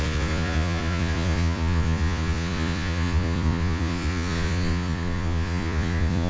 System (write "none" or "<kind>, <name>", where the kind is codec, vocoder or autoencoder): vocoder, Vocos